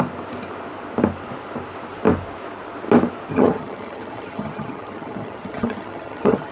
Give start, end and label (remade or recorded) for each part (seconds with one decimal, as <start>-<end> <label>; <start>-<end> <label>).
0.0-3.3 recorded; 3.3-6.5 remade